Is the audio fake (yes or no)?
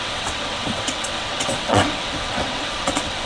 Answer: yes